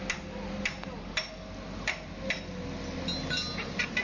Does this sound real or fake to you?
real